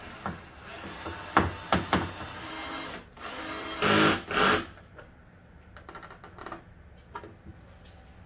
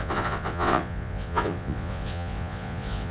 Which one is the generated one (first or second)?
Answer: second